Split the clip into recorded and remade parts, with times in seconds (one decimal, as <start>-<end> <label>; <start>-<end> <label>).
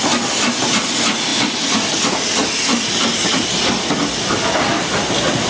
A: 0.0-5.5 recorded